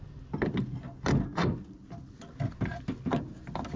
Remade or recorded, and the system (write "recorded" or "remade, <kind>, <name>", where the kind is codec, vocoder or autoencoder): recorded